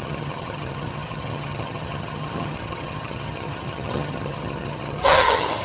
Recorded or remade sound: remade